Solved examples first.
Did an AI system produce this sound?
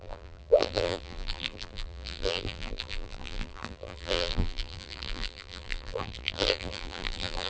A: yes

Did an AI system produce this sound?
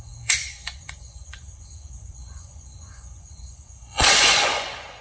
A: yes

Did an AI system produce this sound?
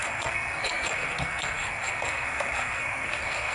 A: yes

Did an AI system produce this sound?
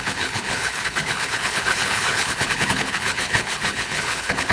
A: yes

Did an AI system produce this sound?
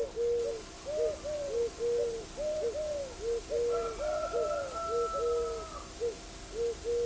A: no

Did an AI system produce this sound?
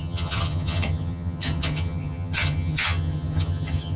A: yes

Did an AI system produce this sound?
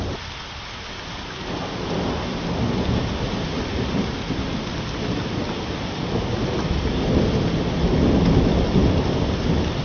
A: no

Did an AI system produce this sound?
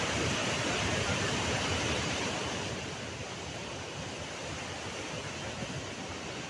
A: no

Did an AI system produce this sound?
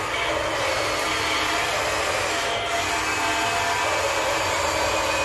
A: no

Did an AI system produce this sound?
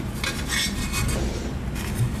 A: no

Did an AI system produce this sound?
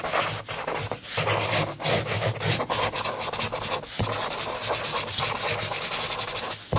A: no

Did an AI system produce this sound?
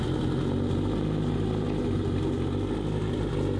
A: no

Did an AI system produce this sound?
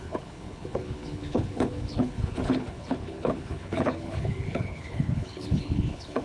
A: yes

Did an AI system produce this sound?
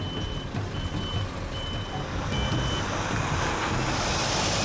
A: no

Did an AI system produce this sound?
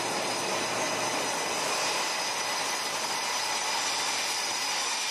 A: no